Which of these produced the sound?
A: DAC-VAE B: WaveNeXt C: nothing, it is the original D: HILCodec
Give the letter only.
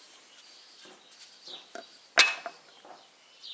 C